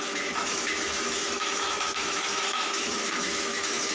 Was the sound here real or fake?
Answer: fake